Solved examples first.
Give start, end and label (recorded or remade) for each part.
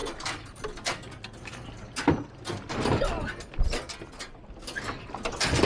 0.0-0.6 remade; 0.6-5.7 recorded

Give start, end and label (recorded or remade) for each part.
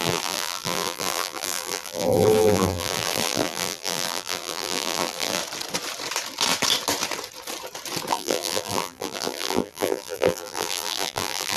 0.0-5.4 remade; 5.4-8.1 recorded; 8.1-11.6 remade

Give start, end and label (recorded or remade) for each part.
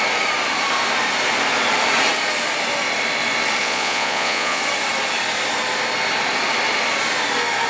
0.0-3.6 recorded; 3.6-4.6 remade; 4.6-7.7 recorded